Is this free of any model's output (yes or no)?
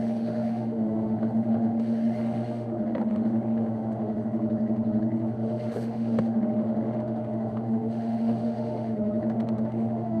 no